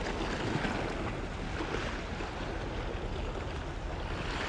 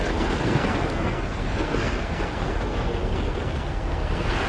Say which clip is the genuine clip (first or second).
first